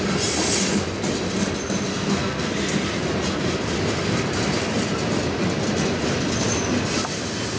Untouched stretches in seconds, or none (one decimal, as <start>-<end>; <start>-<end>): 0.0-1.9; 2.5-7.6